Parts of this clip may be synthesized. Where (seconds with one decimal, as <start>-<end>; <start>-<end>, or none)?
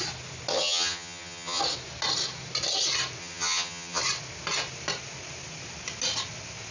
0.5-1.6; 3.2-4.0